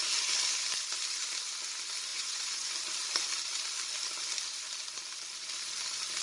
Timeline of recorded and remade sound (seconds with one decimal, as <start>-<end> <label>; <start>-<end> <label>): 0.0-2.1 recorded; 2.1-2.7 remade; 2.7-6.2 recorded